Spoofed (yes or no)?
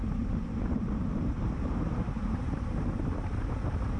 yes